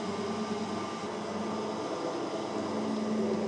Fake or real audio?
real